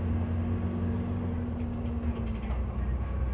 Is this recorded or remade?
recorded